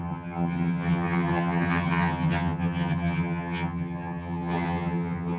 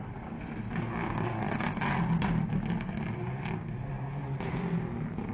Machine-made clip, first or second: first